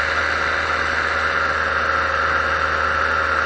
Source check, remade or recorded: recorded